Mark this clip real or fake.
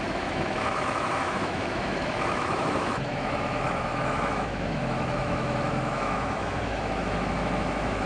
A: fake